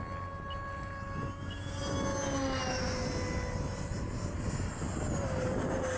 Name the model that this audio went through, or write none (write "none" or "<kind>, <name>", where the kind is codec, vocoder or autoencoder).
none